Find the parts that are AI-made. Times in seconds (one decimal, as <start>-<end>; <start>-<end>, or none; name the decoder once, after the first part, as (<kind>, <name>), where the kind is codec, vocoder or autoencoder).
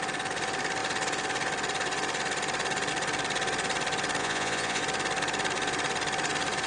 4.2-4.8 (vocoder, Vocos)